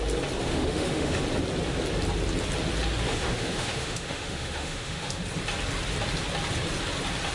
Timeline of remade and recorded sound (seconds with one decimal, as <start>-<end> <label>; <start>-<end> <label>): 0.0-0.5 recorded; 0.5-1.2 remade; 1.2-3.1 recorded; 3.1-5.2 remade; 5.2-7.3 recorded